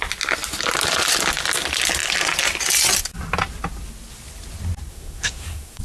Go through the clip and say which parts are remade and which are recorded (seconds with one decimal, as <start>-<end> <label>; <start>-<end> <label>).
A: 0.0-4.9 recorded; 4.9-5.8 remade